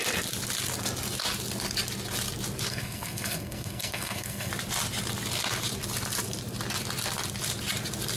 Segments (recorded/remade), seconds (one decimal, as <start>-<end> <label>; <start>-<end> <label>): 0.0-2.7 recorded; 2.7-4.5 remade; 4.5-8.2 recorded